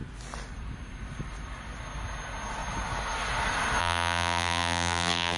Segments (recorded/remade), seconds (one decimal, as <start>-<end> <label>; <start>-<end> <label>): 0.0-3.8 recorded; 3.8-5.4 remade